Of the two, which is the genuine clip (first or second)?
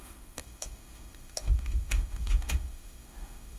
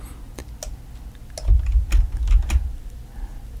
second